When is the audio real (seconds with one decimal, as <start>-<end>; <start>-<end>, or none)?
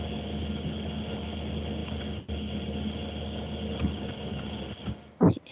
0.0-5.5